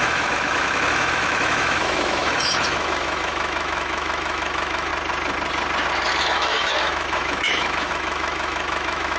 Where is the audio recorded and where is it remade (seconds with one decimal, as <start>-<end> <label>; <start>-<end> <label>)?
0.0-4.9 remade; 4.9-6.2 recorded; 6.2-9.2 remade